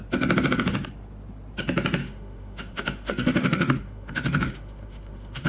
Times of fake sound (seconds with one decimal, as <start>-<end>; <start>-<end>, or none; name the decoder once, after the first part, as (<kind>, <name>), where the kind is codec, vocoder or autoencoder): 2.0-5.5 (autoencoder, DAC-VAE)